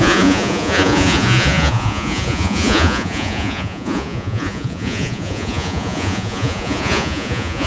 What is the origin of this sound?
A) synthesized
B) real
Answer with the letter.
A